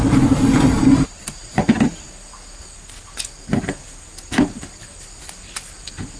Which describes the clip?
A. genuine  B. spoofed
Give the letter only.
A